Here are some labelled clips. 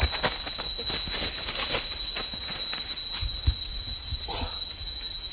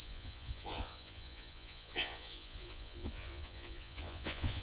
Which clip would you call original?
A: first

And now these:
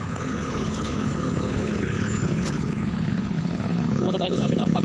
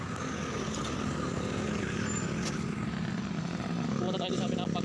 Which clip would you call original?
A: second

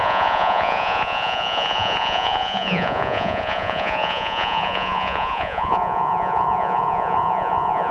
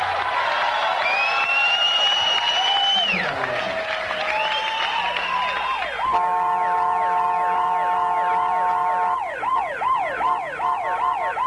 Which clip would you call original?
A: second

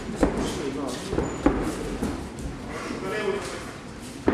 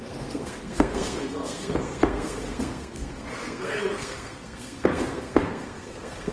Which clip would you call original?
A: first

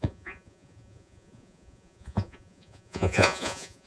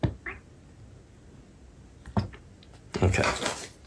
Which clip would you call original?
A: second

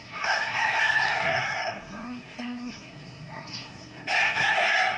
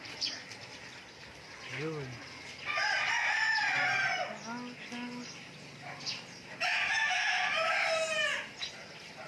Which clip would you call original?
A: second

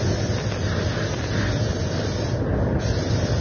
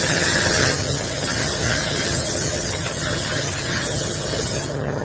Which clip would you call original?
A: first